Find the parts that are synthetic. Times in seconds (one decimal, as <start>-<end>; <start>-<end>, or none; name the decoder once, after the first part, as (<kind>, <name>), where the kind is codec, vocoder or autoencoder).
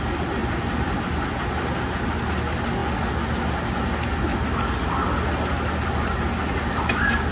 0.4-1.0 (vocoder, BigVGAN v2)